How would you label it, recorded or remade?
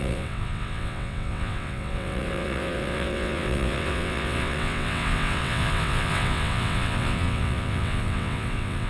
remade